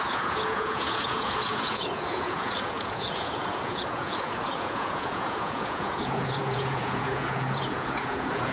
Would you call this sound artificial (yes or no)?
yes